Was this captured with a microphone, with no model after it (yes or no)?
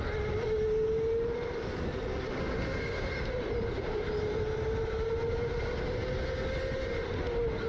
yes